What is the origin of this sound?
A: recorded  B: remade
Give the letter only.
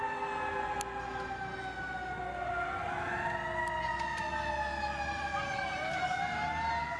A